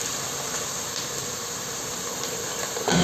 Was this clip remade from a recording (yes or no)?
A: yes